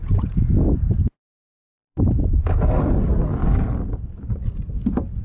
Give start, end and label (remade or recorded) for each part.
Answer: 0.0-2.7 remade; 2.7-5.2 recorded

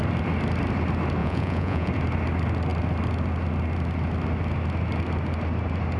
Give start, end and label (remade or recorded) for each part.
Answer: 0.0-1.2 recorded; 1.2-1.9 remade; 1.9-6.0 recorded

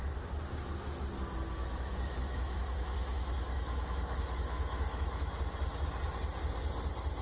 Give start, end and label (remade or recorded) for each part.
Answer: 0.0-1.6 recorded; 1.6-5.3 remade; 5.3-7.2 recorded

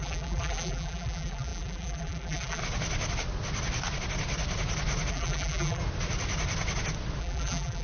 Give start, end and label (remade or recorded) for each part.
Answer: 0.0-2.6 remade; 2.6-5.1 recorded; 5.1-5.8 remade; 5.8-7.2 recorded; 7.2-7.8 remade